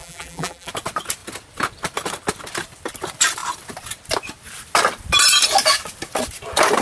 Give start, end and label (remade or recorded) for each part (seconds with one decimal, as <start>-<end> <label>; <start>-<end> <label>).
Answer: 0.0-0.7 remade; 0.7-6.8 recorded